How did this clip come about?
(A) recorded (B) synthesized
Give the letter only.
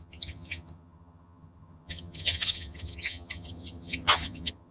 B